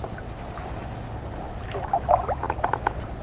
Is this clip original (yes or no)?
yes